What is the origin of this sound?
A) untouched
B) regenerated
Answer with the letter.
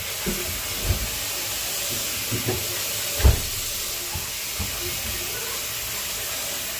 A